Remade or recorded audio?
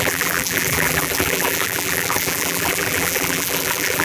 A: remade